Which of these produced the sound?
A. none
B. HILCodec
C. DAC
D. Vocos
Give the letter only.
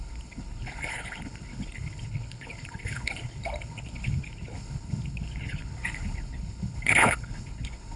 B